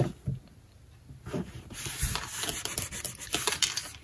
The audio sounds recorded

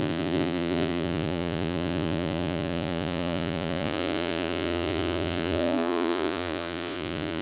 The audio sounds remade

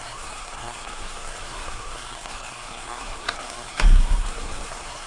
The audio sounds remade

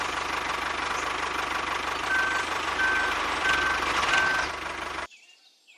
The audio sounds recorded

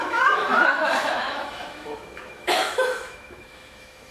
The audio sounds remade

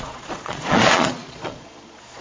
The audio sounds remade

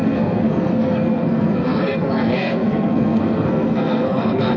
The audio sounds remade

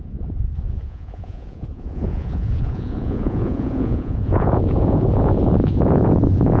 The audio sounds remade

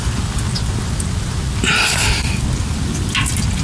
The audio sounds recorded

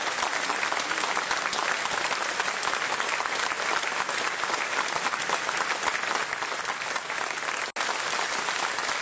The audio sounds recorded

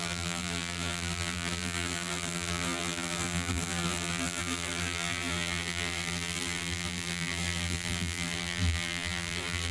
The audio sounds remade